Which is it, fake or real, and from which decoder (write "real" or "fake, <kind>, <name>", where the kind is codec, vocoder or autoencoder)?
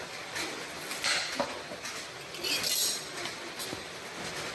real